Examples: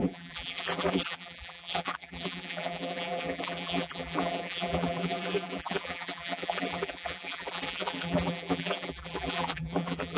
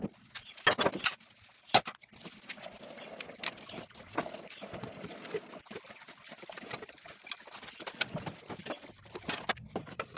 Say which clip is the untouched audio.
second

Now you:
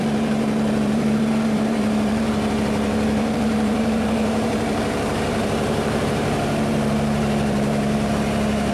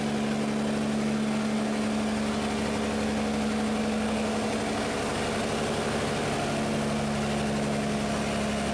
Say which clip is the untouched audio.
second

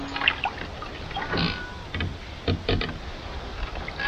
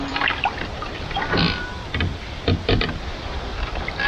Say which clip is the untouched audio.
first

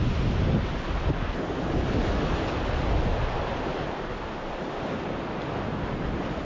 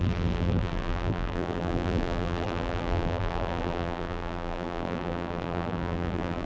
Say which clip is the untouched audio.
first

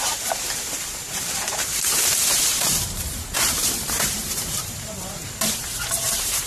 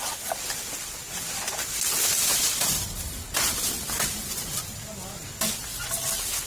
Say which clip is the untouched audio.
second